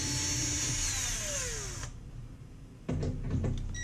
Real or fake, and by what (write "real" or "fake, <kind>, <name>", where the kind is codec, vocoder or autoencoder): real